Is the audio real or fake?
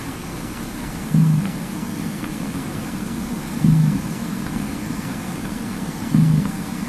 fake